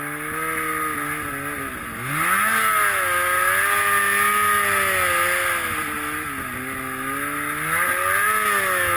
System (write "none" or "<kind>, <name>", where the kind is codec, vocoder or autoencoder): none